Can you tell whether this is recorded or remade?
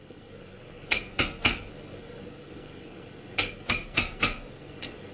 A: remade